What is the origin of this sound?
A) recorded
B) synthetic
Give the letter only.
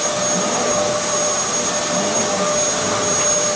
A